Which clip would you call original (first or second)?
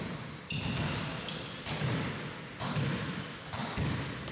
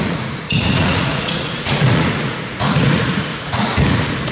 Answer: first